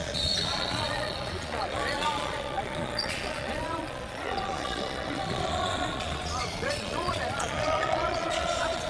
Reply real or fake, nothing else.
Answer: fake